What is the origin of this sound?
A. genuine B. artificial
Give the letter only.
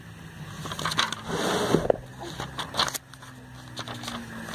A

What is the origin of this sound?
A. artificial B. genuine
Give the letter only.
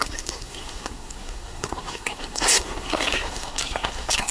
A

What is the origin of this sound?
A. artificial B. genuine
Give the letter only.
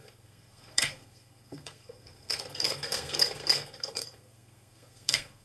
A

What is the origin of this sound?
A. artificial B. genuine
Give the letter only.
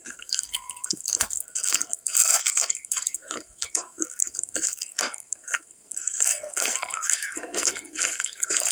A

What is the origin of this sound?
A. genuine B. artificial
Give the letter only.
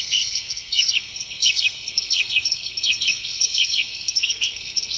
B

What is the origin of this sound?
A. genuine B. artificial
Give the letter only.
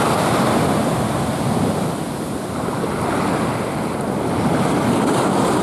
A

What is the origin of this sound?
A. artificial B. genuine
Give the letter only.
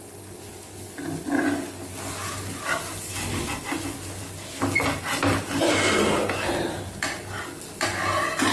B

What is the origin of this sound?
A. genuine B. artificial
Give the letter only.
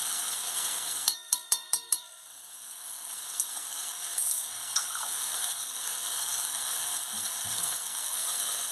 B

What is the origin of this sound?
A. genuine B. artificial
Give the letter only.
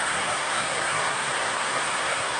B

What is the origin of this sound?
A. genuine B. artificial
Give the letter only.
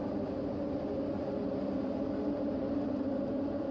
A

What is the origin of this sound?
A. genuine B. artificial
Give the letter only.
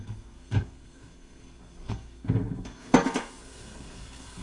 B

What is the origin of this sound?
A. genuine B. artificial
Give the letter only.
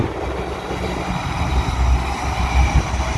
A